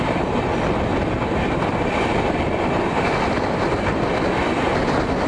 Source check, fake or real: real